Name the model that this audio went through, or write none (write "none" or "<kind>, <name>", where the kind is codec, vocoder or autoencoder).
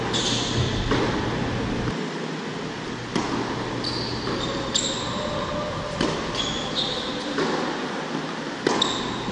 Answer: none